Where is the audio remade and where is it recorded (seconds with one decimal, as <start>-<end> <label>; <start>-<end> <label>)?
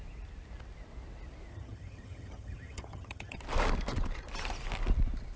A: 0.0-1.5 recorded; 1.5-3.4 remade; 3.4-5.4 recorded